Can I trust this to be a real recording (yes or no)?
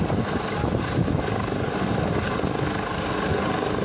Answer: yes